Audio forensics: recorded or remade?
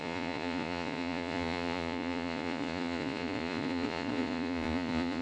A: remade